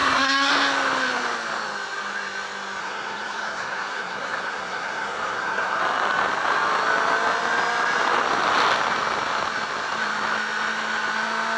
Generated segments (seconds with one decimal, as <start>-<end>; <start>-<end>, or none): 0.0-0.5; 2.8-5.8